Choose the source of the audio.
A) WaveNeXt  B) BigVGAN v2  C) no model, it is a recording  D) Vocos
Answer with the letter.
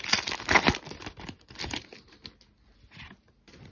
C